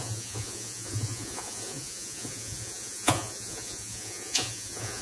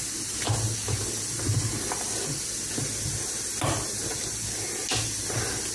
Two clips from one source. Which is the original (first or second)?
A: second